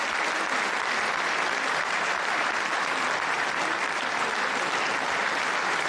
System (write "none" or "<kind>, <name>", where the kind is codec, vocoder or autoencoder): none